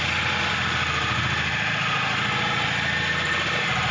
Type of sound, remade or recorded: recorded